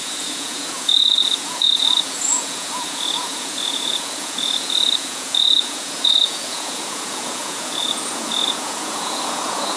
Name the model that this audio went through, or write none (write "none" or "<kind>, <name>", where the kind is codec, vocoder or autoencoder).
vocoder, Vocos